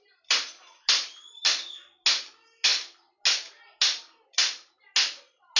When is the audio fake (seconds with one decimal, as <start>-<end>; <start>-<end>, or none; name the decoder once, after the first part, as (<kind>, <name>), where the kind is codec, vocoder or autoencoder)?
none